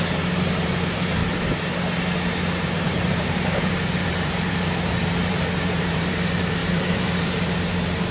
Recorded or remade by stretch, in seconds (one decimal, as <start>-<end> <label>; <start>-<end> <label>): 0.0-1.2 remade; 1.2-2.5 recorded; 2.5-8.1 remade